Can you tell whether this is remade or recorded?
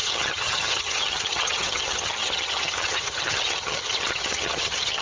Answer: remade